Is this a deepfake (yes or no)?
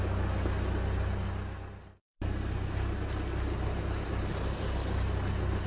no